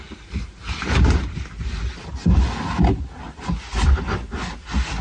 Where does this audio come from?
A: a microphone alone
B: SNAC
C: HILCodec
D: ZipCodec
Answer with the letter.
A